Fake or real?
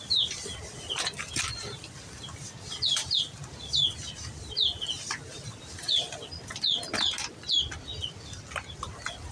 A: real